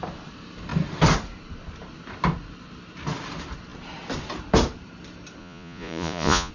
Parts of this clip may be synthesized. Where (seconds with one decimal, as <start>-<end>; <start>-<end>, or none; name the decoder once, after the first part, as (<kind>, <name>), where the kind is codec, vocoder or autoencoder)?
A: 5.4-6.5 (vocoder, Vocos)

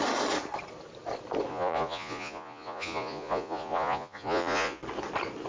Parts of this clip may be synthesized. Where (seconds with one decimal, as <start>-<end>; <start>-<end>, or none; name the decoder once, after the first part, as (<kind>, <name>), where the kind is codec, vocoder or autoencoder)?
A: 1.5-4.8 (vocoder, Vocos)

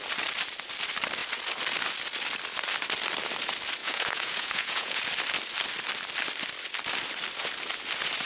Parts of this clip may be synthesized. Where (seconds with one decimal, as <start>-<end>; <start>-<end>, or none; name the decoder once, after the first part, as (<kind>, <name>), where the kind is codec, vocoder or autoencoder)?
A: 3.8-5.0 (vocoder, Vocos)

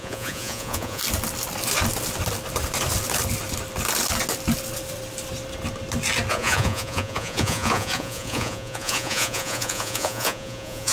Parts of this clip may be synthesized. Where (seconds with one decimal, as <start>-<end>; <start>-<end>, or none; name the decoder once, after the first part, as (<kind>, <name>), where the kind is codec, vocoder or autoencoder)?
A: 0.0-1.0 (vocoder, Vocos); 6.3-10.9

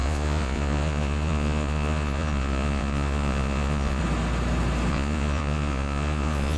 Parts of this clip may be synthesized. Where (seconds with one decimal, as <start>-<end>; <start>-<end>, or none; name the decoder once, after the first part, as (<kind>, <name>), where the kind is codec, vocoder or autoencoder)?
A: 0.0-4.0 (vocoder, Vocos); 4.9-6.6